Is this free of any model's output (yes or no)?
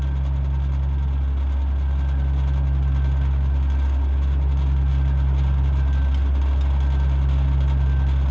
yes